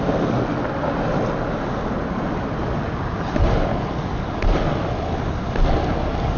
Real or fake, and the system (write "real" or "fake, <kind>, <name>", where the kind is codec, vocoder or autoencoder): real